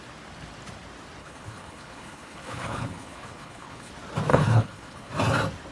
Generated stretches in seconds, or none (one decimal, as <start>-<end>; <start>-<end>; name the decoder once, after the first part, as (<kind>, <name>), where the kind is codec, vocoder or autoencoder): 1.2-3.9 (codec, HILCodec); 4.3-5.1